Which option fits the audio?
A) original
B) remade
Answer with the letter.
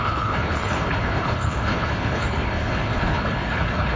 B